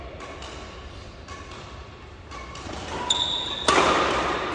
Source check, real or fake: real